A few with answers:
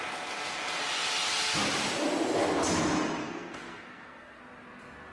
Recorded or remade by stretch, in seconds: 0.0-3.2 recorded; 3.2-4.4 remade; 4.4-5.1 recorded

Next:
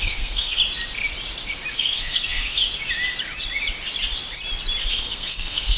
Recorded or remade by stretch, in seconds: 0.0-0.6 remade; 0.6-1.7 recorded; 1.7-2.6 remade; 2.6-4.9 recorded; 4.9-5.8 remade

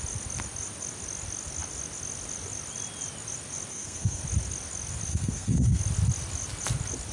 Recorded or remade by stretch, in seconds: 0.0-3.7 recorded; 3.7-4.2 remade; 4.2-5.1 recorded; 5.1-5.8 remade; 5.8-7.1 recorded

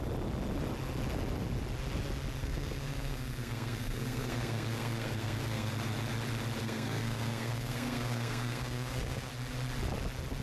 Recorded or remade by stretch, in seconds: 0.0-2.4 recorded; 2.4-5.7 remade; 5.7-6.6 recorded; 6.6-9.3 remade; 9.3-10.4 recorded

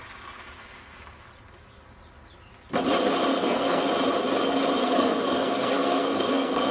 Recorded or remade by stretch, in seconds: 0.0-3.3 recorded; 3.3-3.9 remade; 3.9-4.8 recorded; 4.8-6.7 remade